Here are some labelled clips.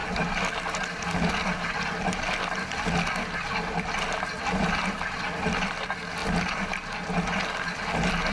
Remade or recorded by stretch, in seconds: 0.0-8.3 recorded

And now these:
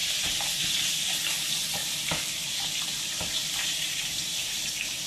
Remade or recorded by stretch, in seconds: 0.0-0.6 remade; 0.6-1.8 recorded; 1.8-5.1 remade

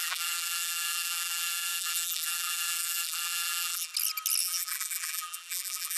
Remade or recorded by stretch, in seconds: 0.0-3.9 remade; 3.9-4.4 recorded; 4.4-6.0 remade

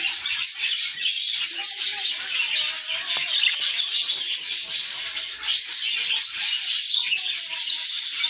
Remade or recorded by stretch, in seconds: 0.0-0.9 remade; 0.9-3.6 recorded; 3.6-4.0 remade; 4.0-4.9 recorded; 4.9-5.7 remade; 5.7-6.4 recorded; 6.4-8.3 remade

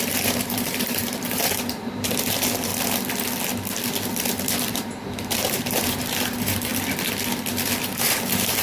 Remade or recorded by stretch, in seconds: 0.0-2.7 remade; 2.7-4.7 recorded; 4.7-6.7 remade; 6.7-7.8 recorded; 7.8-8.6 remade

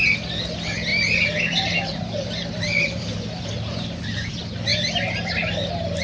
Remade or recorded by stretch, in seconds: 0.0-0.9 recorded; 0.9-4.3 remade; 4.3-6.0 recorded